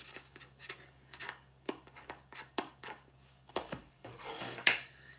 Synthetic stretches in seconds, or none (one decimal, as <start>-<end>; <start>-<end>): 0.0-5.2